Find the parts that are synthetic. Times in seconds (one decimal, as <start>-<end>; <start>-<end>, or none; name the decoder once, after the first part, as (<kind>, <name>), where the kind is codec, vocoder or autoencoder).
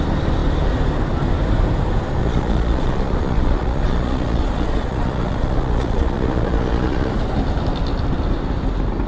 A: 2.2-7.1 (vocoder, Vocos)